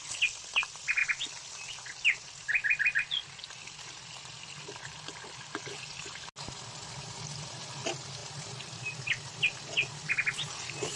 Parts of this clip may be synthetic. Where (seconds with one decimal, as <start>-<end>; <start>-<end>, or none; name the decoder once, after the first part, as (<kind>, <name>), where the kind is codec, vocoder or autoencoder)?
none